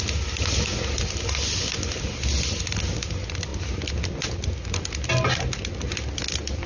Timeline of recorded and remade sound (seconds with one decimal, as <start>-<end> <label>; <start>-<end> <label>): 0.0-6.7 recorded